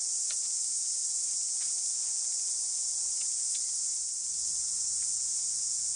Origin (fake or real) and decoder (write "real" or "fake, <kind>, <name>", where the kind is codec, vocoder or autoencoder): fake, vocoder, Vocos